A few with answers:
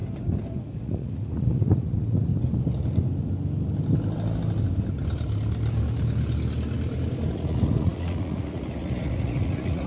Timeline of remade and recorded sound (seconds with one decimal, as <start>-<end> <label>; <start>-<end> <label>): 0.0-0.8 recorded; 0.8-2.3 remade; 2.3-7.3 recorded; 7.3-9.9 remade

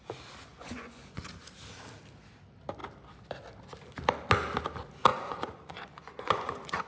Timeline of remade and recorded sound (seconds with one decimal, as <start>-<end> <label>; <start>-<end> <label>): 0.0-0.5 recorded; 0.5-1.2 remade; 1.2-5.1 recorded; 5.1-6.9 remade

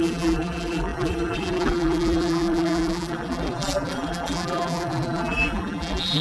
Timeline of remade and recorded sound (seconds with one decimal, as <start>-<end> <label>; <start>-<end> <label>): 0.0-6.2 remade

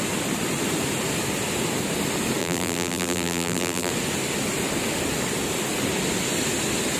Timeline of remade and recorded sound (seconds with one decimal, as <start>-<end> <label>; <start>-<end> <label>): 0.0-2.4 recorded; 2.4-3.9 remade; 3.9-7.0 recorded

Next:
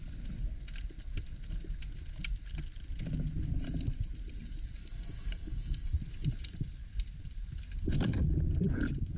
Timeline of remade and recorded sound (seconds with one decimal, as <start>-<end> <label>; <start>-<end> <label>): 0.0-4.8 recorded; 4.8-5.9 remade; 5.9-9.2 recorded

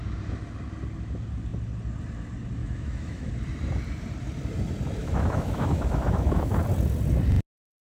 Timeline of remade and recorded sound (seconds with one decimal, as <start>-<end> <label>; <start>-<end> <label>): 0.0-2.6 recorded; 2.6-3.3 remade; 3.3-5.0 recorded; 5.0-6.6 remade; 6.6-7.9 recorded

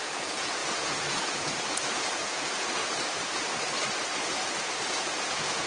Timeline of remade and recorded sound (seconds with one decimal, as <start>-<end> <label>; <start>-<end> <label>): 0.0-2.8 remade; 2.8-4.9 recorded; 4.9-5.7 remade

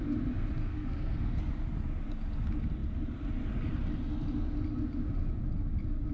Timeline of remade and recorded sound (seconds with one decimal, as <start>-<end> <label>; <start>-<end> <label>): 0.0-0.6 recorded; 0.6-1.4 remade; 1.4-6.1 recorded